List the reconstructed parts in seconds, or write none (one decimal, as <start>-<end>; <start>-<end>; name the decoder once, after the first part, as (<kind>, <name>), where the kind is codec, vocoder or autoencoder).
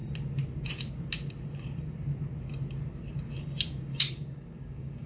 3.9-5.1 (codec, DAC)